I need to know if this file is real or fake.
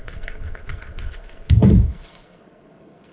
fake